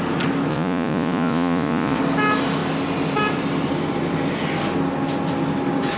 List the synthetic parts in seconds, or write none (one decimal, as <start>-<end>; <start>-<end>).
0.5-2.0